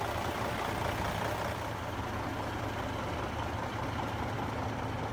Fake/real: real